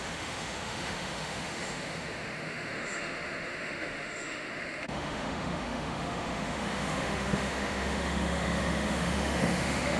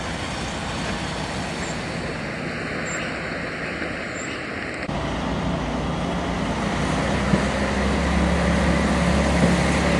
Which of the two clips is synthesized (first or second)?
first